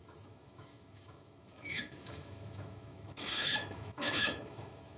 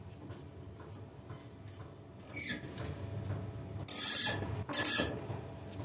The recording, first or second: second